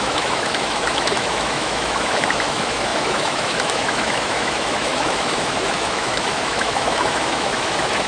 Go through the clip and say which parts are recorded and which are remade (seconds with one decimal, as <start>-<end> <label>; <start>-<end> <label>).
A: 0.0-8.1 remade